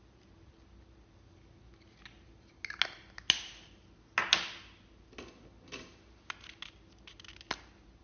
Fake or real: real